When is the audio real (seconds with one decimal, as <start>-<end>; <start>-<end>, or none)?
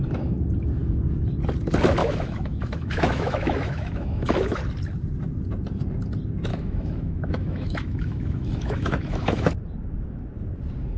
0.0-2.0; 4.6-6.5; 9.5-11.0